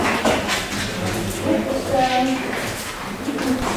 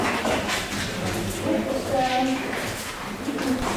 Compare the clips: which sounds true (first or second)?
first